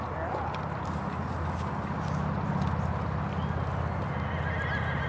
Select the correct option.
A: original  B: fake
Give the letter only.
A